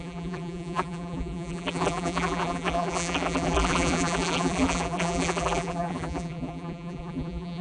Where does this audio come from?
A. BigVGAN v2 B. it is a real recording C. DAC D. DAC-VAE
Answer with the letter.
A